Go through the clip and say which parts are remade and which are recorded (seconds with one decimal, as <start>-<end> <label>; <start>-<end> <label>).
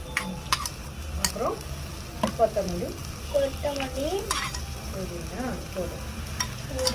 0.0-6.9 recorded